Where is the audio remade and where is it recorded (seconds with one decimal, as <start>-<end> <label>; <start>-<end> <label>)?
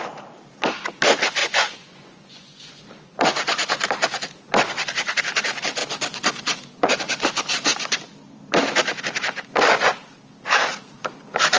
0.0-1.4 recorded; 1.4-2.8 remade; 2.8-11.6 recorded